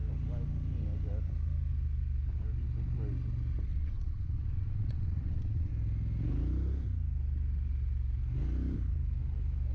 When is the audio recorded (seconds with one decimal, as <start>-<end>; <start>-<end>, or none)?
0.0-3.7; 5.7-9.7